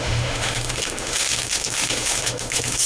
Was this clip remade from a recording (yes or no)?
yes